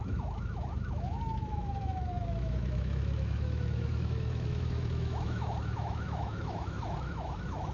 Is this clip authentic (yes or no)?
no